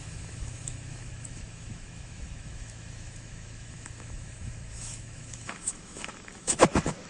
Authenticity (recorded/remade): remade